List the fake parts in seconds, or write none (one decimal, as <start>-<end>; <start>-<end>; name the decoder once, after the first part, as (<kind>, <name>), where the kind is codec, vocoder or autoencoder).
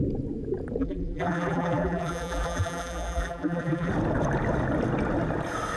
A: 0.8-3.9 (vocoder, BigVGAN v2)